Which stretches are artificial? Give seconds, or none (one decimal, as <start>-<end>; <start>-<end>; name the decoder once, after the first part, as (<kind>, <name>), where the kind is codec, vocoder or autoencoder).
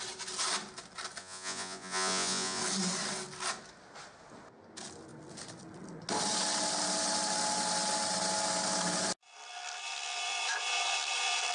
1.2-2.6 (vocoder, Vocos)